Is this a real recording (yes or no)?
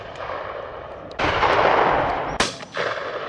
yes